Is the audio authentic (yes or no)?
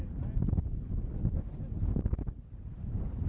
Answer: yes